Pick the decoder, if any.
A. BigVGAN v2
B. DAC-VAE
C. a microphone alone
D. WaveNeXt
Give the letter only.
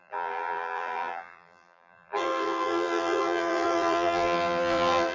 A